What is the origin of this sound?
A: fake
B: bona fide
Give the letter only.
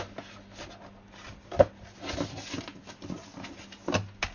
B